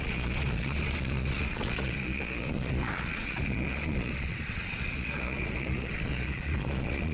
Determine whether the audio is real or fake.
fake